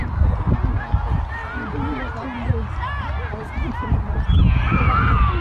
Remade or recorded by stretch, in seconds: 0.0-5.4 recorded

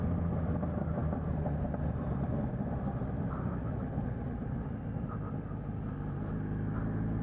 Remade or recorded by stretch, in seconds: 0.0-7.2 recorded